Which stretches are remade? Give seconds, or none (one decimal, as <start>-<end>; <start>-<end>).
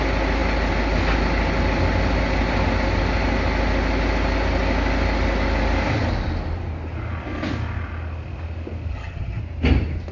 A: 8.9-9.4